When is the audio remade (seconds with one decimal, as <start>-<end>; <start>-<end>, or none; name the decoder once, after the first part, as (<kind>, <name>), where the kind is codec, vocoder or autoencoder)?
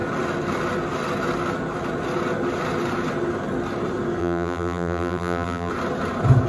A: 4.2-5.7 (vocoder, BigVGAN v2)